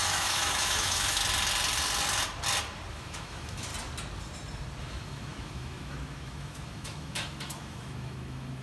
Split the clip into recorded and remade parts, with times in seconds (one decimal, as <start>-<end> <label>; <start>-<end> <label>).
0.0-1.2 remade; 1.2-2.9 recorded; 2.9-3.7 remade; 3.7-4.8 recorded; 4.8-8.6 remade